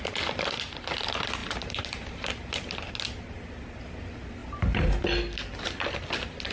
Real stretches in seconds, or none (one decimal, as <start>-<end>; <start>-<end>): 0.0-1.4; 2.9-4.4; 5.0-6.5